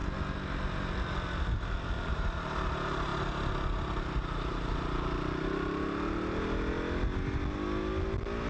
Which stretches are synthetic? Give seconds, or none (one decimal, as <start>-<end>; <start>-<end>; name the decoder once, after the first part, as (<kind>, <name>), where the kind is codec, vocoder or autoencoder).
2.1-3.1 (vocoder, BigVGAN v2)

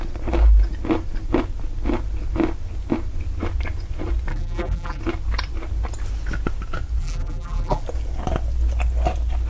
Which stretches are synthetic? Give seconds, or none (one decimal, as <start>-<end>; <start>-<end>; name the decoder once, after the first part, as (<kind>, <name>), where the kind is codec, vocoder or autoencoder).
4.3-5.0 (vocoder, BigVGAN v2); 7.0-7.8

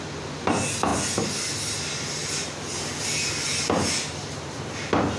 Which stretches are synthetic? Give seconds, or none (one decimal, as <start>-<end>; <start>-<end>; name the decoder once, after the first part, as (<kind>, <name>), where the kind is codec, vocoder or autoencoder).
none

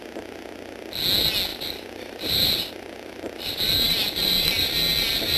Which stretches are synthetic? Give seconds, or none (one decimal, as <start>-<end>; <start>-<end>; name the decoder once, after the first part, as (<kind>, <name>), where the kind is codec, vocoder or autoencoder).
1.5-4.7 (vocoder, BigVGAN v2)